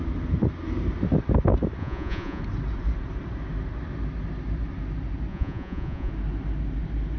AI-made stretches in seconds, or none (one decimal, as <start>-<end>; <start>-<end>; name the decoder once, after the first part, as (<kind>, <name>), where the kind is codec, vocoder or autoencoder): 1.8-2.4 (vocoder, Vocos); 5.3-6.1